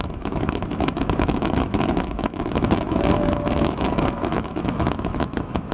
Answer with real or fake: fake